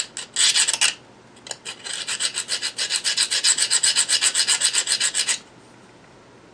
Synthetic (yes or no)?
no